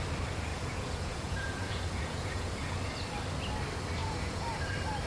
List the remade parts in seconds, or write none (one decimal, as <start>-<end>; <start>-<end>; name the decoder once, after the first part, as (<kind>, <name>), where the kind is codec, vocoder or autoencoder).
0.5-2.8 (vocoder, Vocos); 4.0-4.6